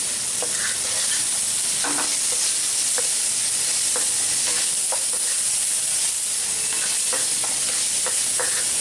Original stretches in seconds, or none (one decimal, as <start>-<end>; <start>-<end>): 0.0-8.8